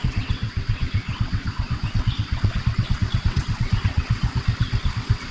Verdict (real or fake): fake